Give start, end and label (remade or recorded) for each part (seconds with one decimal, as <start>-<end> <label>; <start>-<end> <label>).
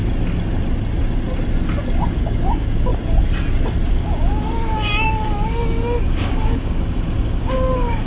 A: 0.0-2.1 recorded; 2.1-2.9 remade; 2.9-3.9 recorded; 3.9-8.1 remade